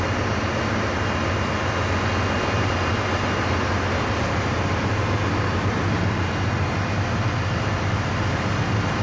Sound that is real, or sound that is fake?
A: real